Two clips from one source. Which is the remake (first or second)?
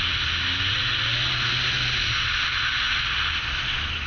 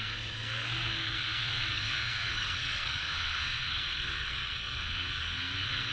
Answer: second